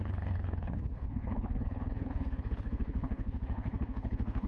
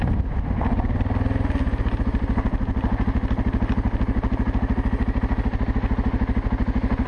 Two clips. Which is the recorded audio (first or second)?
second